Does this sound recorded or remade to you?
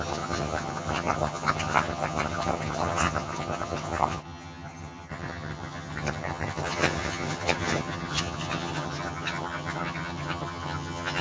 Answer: remade